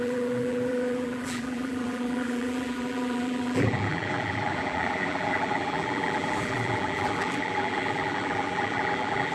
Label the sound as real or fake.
fake